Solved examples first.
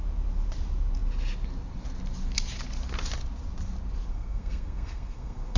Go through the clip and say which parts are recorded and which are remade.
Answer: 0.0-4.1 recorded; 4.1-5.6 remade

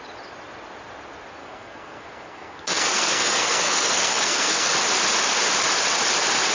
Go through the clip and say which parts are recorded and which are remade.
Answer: 0.0-1.4 recorded; 1.4-4.7 remade; 4.7-6.5 recorded